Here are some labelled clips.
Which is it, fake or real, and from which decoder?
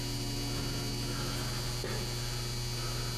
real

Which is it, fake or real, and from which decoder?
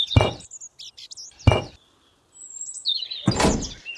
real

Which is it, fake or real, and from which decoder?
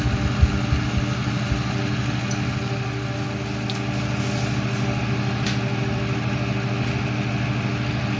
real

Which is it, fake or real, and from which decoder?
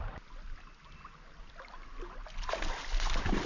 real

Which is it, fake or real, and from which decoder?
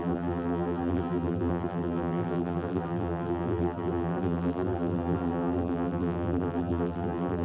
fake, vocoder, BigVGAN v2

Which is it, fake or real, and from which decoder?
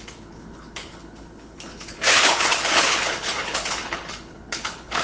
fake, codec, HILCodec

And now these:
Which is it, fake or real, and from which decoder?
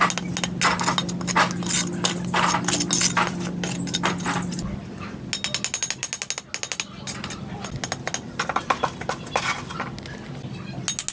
real